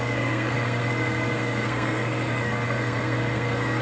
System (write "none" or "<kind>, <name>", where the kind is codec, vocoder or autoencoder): codec, SNAC